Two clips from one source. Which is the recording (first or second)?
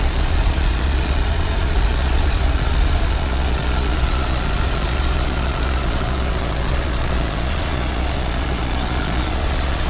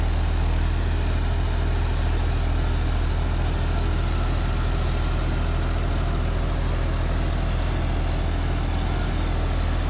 second